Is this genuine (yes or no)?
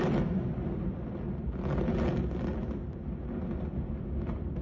yes